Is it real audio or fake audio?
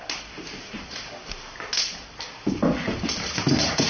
real